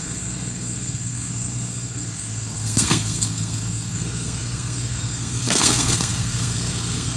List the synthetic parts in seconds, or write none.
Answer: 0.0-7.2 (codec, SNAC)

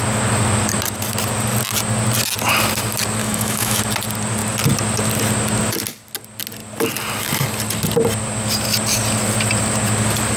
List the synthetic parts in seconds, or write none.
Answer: 3.2-3.8 (autoencoder, DAC-VAE)

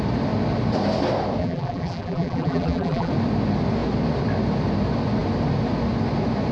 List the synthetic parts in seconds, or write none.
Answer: 1.4-3.1 (vocoder, BigVGAN v2)

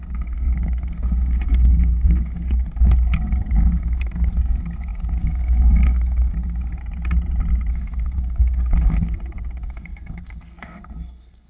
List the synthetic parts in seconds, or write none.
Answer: 0.0-6.8 (codec, SNAC); 7.7-11.5

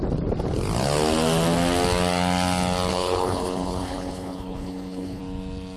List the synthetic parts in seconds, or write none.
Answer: 2.9-5.2 (codec, HILCodec)